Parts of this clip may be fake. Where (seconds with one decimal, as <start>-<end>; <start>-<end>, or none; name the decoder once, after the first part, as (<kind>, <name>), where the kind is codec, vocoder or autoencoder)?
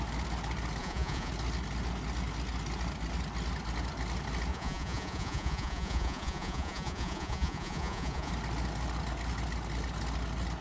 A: 0.8-1.3 (vocoder, Vocos); 4.5-8.3